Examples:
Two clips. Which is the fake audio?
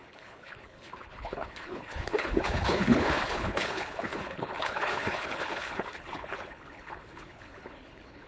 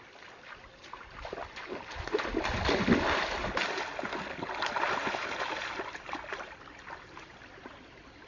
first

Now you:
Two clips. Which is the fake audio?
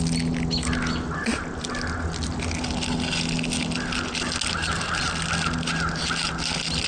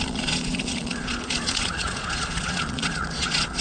second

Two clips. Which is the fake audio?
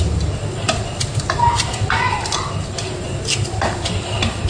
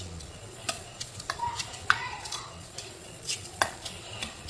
second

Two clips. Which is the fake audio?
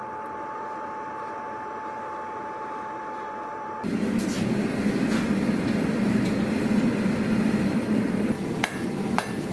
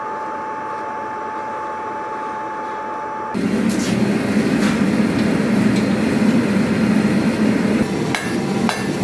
first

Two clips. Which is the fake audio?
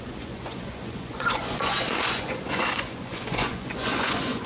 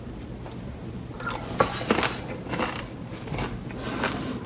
first